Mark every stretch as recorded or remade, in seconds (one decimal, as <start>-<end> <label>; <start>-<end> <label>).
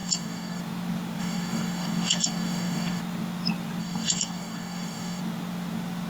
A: 0.0-0.6 remade; 0.6-1.2 recorded; 1.2-3.0 remade; 3.0-3.8 recorded; 3.8-5.2 remade; 5.2-6.1 recorded